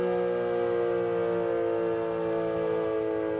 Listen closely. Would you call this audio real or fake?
real